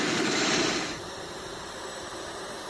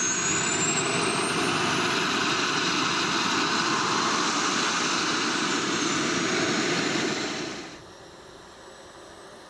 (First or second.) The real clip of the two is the second